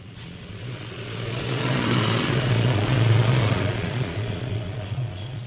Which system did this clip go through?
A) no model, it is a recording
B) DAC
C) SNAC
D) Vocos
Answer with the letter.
D